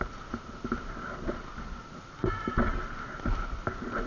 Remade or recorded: recorded